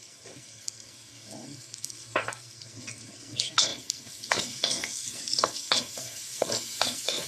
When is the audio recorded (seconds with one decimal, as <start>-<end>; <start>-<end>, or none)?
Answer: none